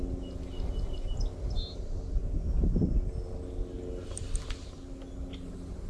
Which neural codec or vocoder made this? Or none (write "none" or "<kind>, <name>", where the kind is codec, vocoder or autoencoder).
none